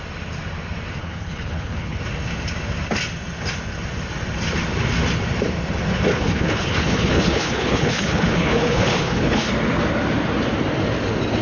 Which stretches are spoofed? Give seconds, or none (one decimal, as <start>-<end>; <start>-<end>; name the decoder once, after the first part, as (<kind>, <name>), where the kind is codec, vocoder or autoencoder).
1.0-2.0 (codec, HILCodec); 6.1-9.5